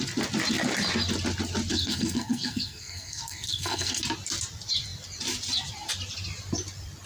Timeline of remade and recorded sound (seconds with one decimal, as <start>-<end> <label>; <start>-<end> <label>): 0.0-1.7 recorded; 1.7-4.0 remade; 4.0-7.1 recorded

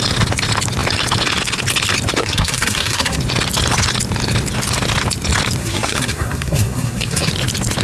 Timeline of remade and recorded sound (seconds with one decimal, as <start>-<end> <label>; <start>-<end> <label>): 0.0-2.2 recorded; 2.2-3.2 remade; 3.2-5.6 recorded; 5.6-7.3 remade; 7.3-7.8 recorded

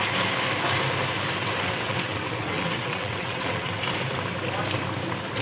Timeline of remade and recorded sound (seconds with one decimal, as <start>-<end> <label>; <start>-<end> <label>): 0.0-1.4 recorded; 1.4-3.8 remade; 3.8-5.4 recorded